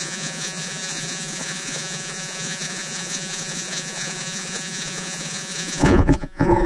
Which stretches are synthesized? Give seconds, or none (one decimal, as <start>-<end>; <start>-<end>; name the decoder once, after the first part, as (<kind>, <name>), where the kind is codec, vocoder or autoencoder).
0.0-6.7 (vocoder, Vocos)